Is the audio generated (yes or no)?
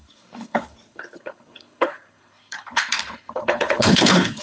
yes